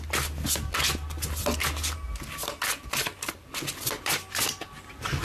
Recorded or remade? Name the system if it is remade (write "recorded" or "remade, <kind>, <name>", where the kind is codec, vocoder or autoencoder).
recorded